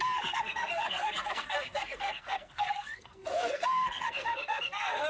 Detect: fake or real fake